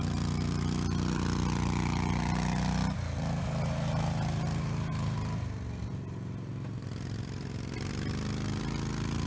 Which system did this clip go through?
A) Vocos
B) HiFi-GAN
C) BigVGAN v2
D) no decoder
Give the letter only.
D